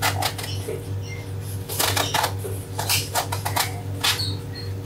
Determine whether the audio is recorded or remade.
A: recorded